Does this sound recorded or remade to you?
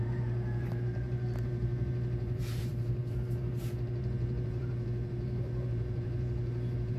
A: remade